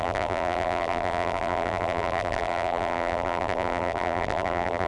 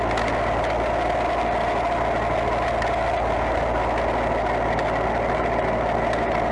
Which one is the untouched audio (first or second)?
second